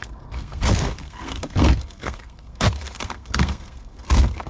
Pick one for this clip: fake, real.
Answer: fake